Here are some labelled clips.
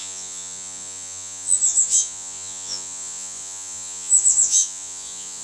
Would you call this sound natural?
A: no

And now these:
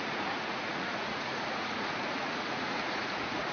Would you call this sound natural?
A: no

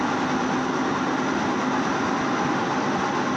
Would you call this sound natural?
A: yes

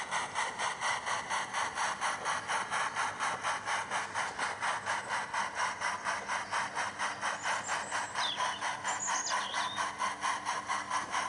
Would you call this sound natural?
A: yes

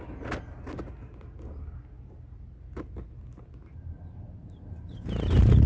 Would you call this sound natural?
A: yes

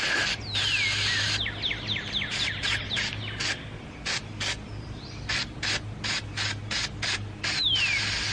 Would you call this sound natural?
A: yes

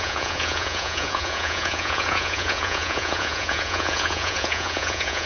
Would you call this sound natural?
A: no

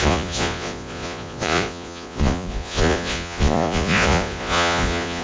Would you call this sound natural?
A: no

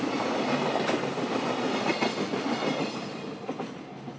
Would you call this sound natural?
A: yes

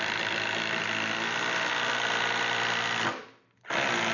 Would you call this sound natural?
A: yes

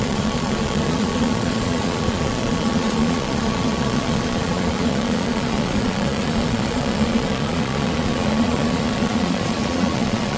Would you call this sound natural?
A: no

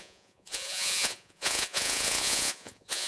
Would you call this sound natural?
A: no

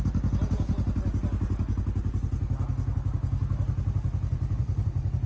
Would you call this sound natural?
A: yes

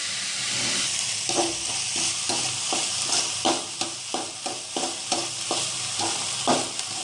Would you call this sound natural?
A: yes